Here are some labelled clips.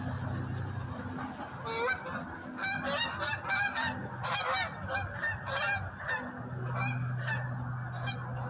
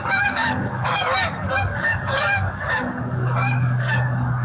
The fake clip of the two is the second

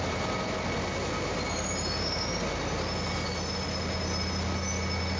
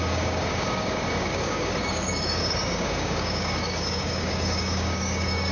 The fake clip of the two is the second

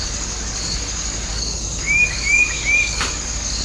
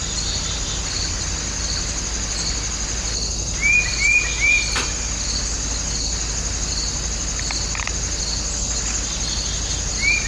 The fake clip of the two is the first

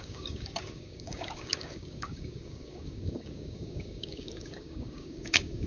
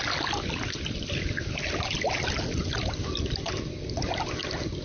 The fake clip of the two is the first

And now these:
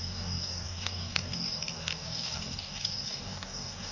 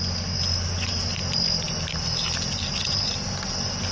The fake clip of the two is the first